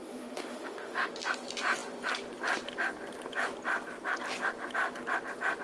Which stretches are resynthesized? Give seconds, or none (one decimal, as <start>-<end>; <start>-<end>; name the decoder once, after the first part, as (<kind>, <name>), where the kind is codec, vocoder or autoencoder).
0.0-1.1 (autoencoder, DAC-VAE)